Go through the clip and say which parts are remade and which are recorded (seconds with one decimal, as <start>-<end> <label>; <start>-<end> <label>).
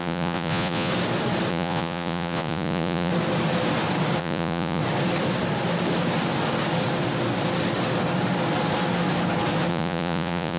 0.0-0.9 remade; 0.9-1.5 recorded; 1.5-3.1 remade; 3.1-4.2 recorded; 4.2-4.8 remade; 4.8-9.7 recorded; 9.7-10.6 remade